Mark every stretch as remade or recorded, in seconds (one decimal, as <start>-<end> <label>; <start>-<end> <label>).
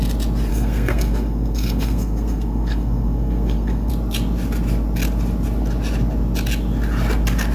0.0-0.5 recorded; 0.5-3.9 remade; 3.9-7.5 recorded